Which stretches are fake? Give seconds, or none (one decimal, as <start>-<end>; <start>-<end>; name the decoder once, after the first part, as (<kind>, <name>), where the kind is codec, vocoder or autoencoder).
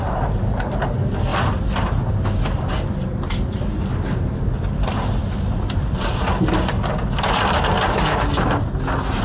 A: none